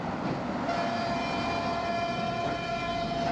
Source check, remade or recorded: recorded